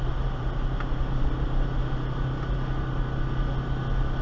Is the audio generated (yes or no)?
no